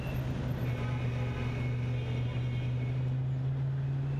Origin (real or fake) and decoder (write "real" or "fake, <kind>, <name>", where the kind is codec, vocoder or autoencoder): real